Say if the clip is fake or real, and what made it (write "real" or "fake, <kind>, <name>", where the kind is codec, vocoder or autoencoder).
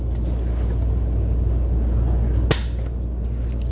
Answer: real